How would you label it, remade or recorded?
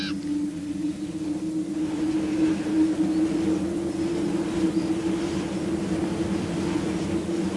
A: recorded